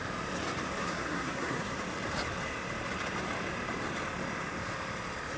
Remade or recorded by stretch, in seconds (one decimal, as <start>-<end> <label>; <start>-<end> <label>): 0.0-0.8 recorded; 0.8-1.7 remade; 1.7-5.4 recorded